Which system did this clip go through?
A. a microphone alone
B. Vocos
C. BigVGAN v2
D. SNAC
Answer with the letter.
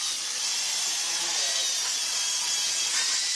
A